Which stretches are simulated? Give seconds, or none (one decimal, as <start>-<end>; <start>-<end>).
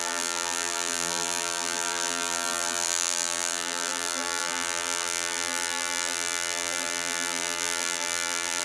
0.0-8.6